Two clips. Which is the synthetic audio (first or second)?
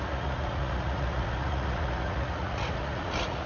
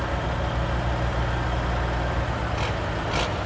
first